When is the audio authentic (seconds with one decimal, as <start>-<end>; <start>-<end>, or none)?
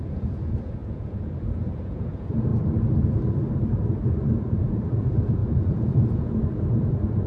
2.5-4.4